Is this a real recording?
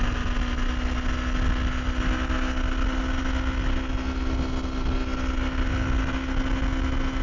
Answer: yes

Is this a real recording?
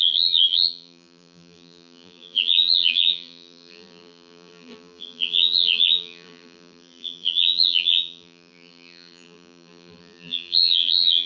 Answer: no